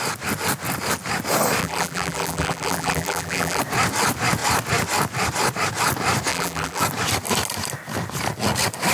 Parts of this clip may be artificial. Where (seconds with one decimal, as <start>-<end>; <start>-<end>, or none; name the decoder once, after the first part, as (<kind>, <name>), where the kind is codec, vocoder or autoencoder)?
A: 1.6-3.6 (vocoder, BigVGAN v2); 6.3-6.8